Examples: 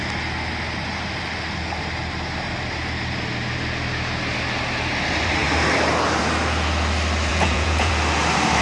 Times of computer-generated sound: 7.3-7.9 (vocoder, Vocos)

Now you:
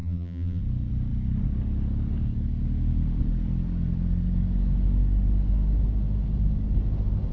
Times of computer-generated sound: 0.0-0.6 (vocoder, BigVGAN v2)